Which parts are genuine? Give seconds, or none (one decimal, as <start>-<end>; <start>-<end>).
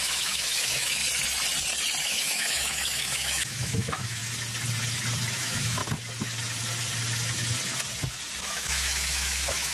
1.0-2.0; 4.2-5.3; 5.8-8.4